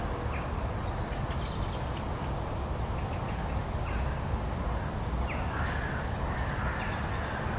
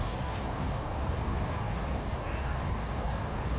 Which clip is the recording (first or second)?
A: first